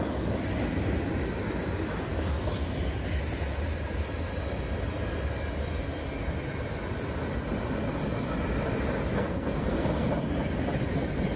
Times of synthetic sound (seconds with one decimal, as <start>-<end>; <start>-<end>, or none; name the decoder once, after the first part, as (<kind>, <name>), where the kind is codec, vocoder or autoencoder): 9.2-10.1 (codec, SNAC)